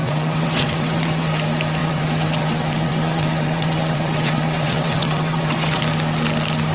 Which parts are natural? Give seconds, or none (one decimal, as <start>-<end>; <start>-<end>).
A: 1.3-1.8; 5.8-6.7